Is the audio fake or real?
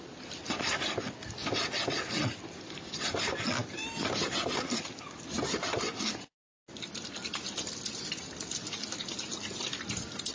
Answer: real